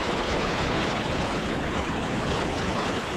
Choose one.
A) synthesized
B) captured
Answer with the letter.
A